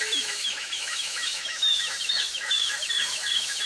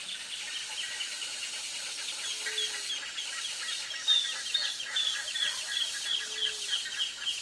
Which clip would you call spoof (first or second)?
first